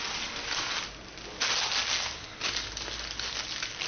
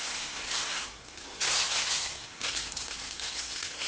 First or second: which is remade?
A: second